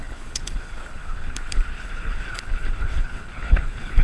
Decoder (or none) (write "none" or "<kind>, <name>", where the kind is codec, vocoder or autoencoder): codec, HILCodec